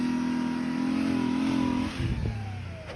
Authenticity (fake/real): real